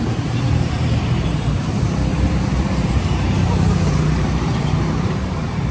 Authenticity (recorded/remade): remade